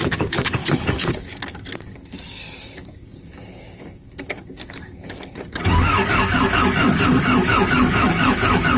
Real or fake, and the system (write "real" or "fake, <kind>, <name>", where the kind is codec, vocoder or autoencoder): fake, codec, DAC